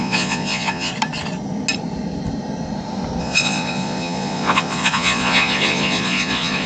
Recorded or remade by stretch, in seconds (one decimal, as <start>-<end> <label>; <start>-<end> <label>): 0.0-0.9 remade; 0.9-3.2 recorded; 3.2-6.7 remade